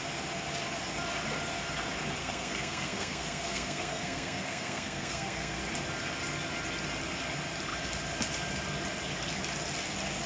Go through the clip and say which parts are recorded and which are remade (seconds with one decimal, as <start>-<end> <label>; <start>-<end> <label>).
0.0-2.2 recorded; 2.2-5.6 remade; 5.6-10.3 recorded